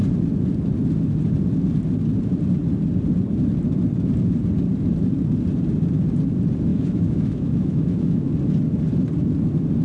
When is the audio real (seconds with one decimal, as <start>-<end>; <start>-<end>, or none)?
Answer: 0.0-6.7; 8.3-9.8